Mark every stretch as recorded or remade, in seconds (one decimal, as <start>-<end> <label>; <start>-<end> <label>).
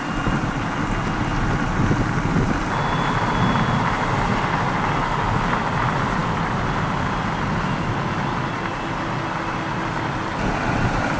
0.0-11.2 recorded